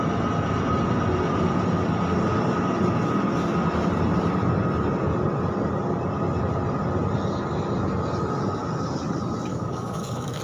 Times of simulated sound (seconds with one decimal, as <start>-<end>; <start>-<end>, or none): 9.5-10.4